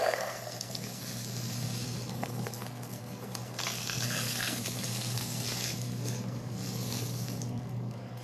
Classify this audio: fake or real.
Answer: fake